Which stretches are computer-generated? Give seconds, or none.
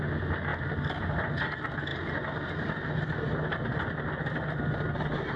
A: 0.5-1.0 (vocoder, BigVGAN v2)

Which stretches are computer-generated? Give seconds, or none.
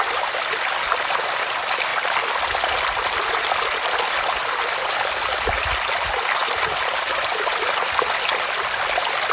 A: 1.9-3.5 (vocoder, BigVGAN v2); 8.3-8.8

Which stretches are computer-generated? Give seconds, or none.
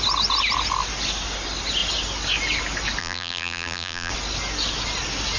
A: 3.0-4.1 (vocoder, BigVGAN v2)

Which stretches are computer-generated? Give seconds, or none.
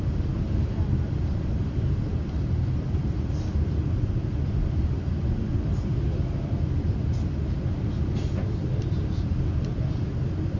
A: none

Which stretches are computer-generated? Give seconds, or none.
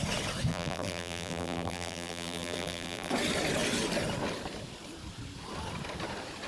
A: 0.5-3.1 (vocoder, BigVGAN v2)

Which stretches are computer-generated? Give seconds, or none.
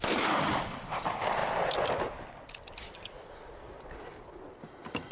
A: 0.0-1.4 (vocoder, BigVGAN v2); 4.5-5.1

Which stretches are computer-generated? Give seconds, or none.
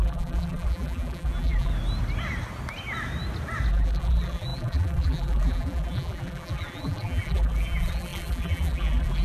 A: 0.0-1.7 (vocoder, BigVGAN v2); 3.7-9.2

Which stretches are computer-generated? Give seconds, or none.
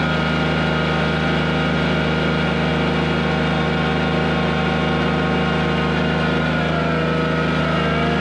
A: none